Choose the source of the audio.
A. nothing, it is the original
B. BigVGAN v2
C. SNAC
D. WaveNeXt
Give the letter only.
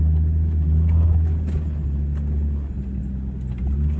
A